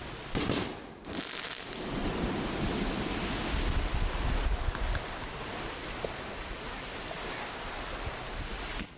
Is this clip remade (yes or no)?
no